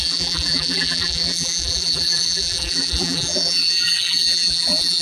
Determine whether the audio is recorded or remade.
remade